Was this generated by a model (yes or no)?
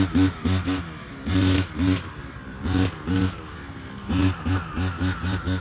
no